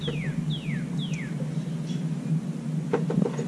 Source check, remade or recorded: recorded